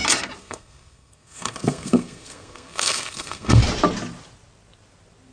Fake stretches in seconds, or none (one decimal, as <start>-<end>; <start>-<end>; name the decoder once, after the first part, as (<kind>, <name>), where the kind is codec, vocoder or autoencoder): 0.4-3.6 (codec, SNAC)